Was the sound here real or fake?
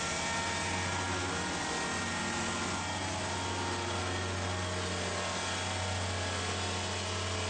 real